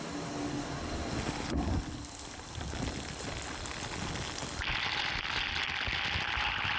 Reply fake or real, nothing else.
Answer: real